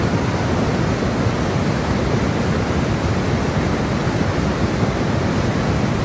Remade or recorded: recorded